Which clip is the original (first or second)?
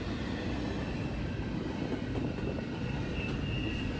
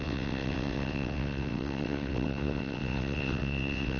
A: first